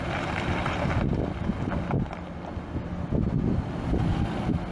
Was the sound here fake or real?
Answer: real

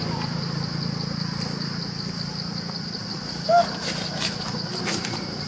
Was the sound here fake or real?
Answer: real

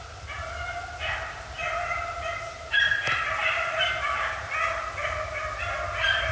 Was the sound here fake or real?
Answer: real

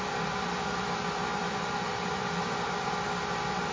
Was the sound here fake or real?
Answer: real